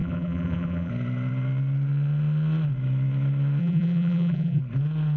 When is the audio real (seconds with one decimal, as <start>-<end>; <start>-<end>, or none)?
0.9-3.6; 4.6-5.2